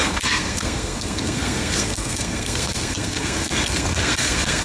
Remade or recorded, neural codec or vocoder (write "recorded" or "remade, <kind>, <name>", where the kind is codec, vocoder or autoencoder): remade, codec, SNAC